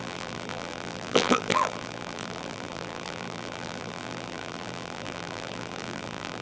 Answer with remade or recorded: remade